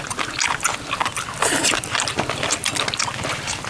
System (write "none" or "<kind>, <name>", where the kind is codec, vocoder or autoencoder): none